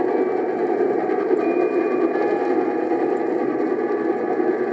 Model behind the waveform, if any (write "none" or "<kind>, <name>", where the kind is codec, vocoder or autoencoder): none